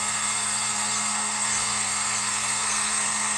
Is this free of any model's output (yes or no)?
no